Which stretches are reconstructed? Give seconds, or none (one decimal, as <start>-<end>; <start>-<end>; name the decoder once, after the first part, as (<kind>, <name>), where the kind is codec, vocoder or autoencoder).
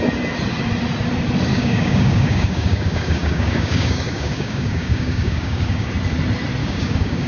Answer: 1.5-5.9 (codec, DAC); 6.6-7.3